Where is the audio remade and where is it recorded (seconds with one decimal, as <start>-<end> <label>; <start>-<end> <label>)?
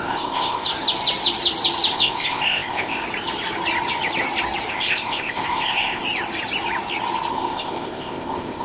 0.0-0.7 remade; 0.7-1.9 recorded; 1.9-3.0 remade; 3.0-4.7 recorded; 4.7-6.0 remade; 6.0-7.3 recorded; 7.3-8.6 remade